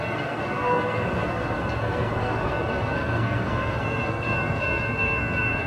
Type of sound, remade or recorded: remade